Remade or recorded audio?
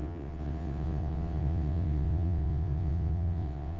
remade